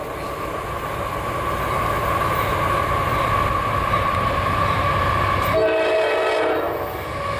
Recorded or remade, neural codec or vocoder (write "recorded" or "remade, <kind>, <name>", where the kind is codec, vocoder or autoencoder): recorded